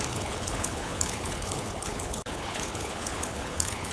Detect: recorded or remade remade